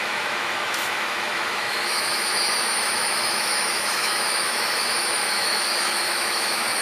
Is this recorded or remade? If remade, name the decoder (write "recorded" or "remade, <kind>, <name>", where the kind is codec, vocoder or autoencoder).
remade, autoencoder, DAC-VAE